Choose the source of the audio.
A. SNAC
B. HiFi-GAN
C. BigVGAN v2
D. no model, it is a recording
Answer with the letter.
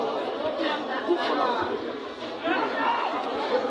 C